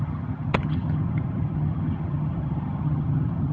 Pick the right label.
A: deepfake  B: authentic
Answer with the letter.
A